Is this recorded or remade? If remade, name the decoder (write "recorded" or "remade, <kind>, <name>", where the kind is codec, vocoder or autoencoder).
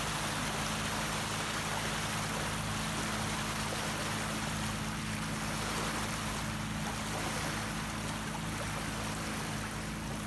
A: recorded